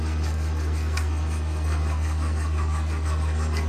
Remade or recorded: remade